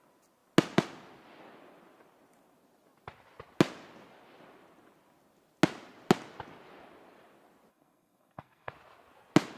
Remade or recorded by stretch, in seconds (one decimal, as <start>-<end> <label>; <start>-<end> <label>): 0.0-7.7 recorded; 7.7-8.7 remade; 8.7-9.6 recorded